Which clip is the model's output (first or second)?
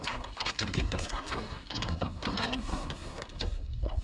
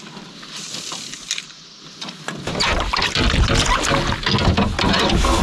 first